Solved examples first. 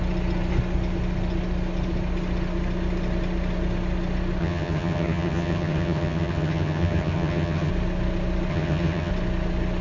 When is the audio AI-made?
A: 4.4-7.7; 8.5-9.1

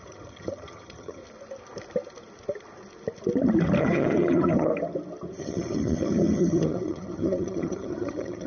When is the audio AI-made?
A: 0.0-1.2; 3.8-4.7; 5.4-8.5

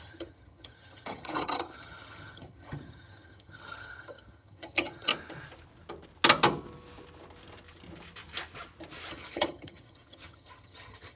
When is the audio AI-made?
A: 0.0-5.1; 9.1-11.2

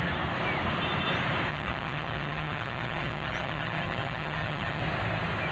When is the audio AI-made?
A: 1.5-4.8